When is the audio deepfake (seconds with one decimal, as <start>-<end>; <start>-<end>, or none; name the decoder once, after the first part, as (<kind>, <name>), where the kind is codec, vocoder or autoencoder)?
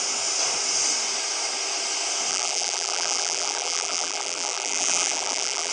2.3-5.7 (vocoder, BigVGAN v2)